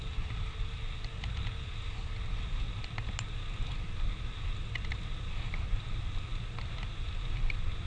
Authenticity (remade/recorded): recorded